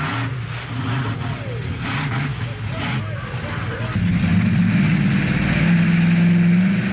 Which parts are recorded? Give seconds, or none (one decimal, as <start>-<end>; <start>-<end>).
0.0-6.9